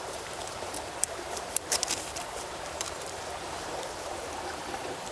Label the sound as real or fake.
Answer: fake